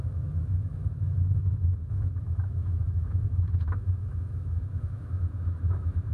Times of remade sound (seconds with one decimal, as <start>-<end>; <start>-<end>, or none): 0.0-6.1